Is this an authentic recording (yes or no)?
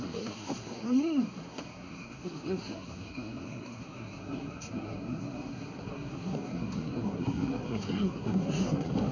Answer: no